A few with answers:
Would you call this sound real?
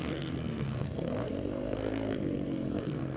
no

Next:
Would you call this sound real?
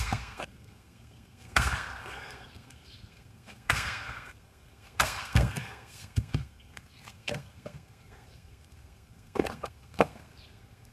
no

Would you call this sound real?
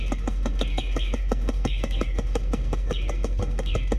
no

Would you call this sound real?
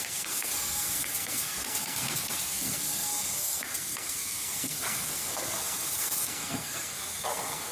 no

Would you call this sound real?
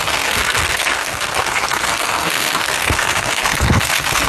no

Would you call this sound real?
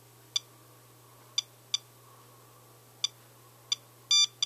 yes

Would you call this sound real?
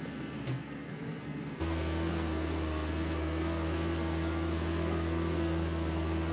no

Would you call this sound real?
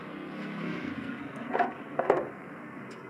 no